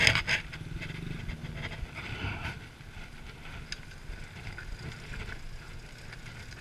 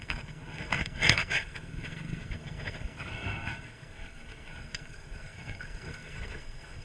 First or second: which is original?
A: first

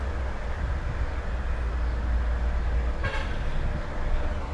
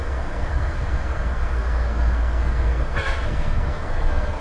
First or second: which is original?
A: first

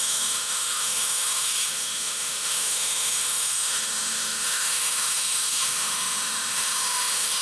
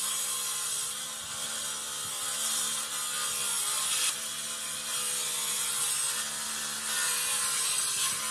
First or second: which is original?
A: second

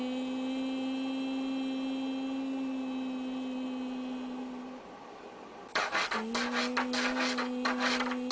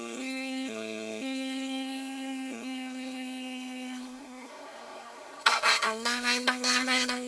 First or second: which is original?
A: first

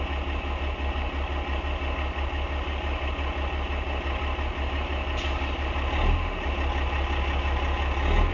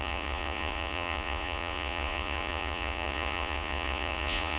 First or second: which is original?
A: first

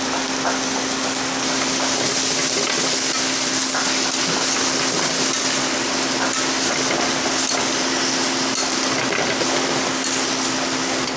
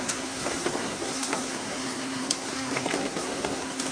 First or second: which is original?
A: first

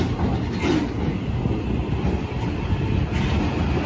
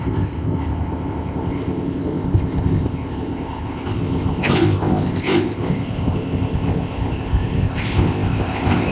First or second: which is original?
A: first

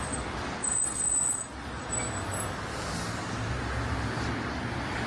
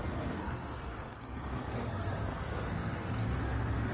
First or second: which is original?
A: first